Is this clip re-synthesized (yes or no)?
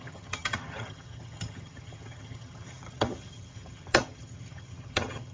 yes